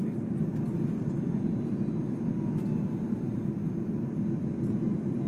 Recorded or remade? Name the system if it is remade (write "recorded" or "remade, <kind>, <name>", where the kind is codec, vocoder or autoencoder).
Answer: recorded